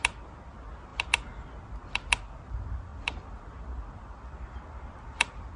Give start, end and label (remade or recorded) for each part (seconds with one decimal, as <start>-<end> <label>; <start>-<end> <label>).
0.0-2.9 recorded; 2.9-5.6 remade